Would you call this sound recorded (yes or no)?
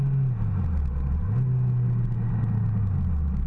yes